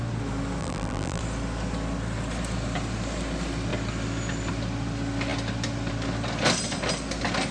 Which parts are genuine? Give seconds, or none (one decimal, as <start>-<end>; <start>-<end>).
0.0-0.6; 1.2-7.5